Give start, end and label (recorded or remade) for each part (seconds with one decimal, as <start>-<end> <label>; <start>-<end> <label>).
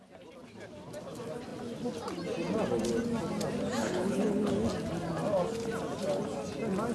0.0-3.8 recorded; 3.8-4.5 remade; 4.5-6.9 recorded